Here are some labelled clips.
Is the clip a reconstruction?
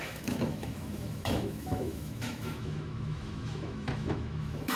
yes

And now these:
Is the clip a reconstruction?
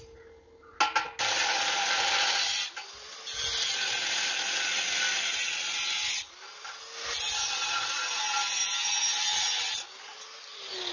no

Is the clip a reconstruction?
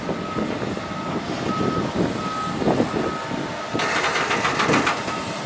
no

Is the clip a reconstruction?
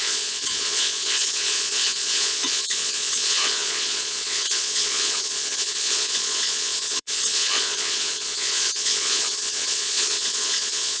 yes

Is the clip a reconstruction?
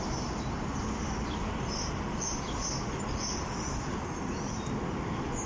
no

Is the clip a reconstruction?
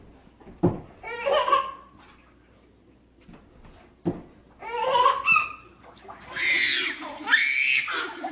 no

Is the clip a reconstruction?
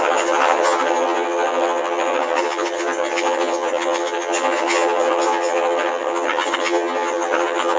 yes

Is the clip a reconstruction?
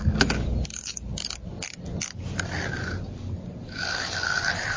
no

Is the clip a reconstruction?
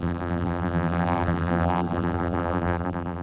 yes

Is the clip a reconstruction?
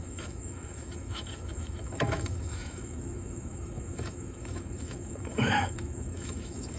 yes